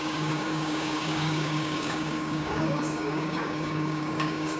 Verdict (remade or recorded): remade